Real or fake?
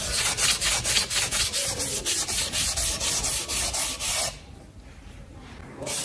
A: real